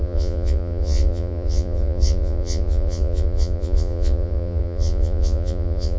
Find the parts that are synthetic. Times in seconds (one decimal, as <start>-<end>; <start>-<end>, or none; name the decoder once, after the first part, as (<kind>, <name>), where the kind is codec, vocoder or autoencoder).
0.0-6.0 (vocoder, Vocos)